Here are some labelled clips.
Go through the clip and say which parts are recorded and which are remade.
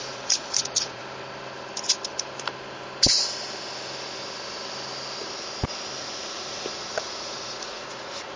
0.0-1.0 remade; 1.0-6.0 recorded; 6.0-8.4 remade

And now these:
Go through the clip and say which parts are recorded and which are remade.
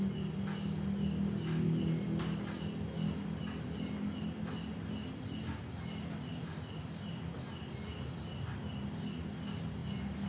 0.0-10.3 recorded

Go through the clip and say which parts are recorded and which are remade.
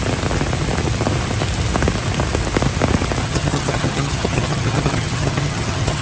0.0-3.2 recorded; 3.2-6.0 remade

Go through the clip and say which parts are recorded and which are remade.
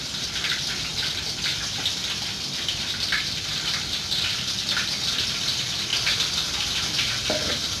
0.0-5.9 remade; 5.9-6.5 recorded; 6.5-7.8 remade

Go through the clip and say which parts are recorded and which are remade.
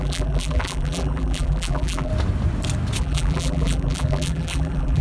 0.0-2.1 remade; 2.1-3.0 recorded; 3.0-5.0 remade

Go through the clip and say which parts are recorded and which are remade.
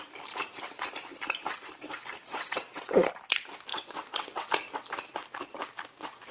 0.0-2.3 recorded; 2.3-2.9 remade; 2.9-3.7 recorded; 3.7-4.5 remade; 4.5-6.3 recorded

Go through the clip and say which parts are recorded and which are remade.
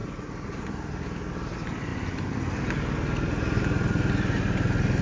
0.0-5.0 recorded